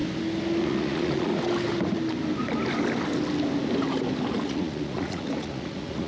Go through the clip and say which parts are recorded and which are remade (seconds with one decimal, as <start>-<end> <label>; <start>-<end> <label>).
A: 0.0-0.6 recorded; 0.6-1.3 remade; 1.3-4.3 recorded; 4.3-6.1 remade